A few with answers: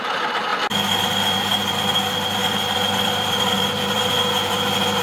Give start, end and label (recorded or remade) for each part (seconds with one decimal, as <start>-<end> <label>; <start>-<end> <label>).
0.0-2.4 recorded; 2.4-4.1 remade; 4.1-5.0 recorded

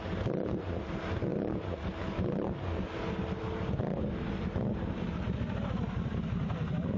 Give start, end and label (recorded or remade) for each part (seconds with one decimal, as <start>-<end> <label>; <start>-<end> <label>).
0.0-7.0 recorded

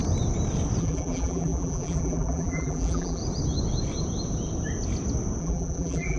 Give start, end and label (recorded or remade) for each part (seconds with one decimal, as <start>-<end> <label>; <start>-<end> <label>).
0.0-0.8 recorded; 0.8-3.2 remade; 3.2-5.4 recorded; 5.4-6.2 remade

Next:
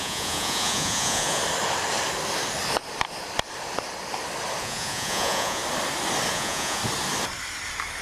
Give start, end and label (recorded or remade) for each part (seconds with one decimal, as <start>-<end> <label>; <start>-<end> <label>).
0.0-1.4 remade; 1.4-4.6 recorded; 4.6-5.6 remade; 5.6-6.3 recorded; 6.3-6.8 remade; 6.8-8.0 recorded

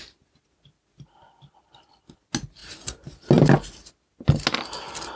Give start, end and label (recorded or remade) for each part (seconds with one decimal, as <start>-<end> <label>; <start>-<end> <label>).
0.0-5.2 recorded